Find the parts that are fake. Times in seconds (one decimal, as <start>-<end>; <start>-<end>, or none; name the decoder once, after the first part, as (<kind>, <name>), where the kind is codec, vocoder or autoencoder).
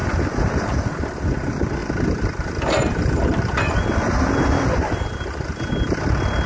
none